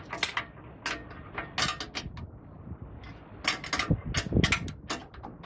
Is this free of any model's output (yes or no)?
yes